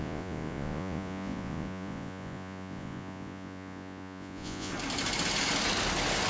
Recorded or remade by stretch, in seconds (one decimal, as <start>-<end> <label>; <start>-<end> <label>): 0.0-4.7 remade; 4.7-6.3 recorded

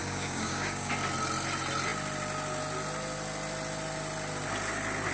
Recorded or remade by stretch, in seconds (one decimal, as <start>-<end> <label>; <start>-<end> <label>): 0.0-0.9 remade; 0.9-5.1 recorded

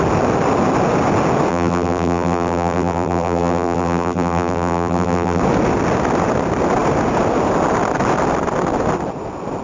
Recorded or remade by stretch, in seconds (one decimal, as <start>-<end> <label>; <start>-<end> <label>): 0.0-1.5 recorded; 1.5-5.4 remade; 5.4-9.6 recorded

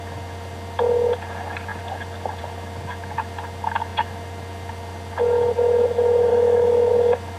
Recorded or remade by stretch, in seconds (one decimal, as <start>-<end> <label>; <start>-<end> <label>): 0.0-6.3 recorded; 6.3-6.9 remade; 6.9-7.4 recorded